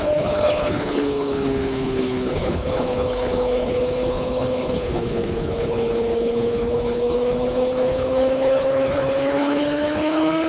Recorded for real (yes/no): no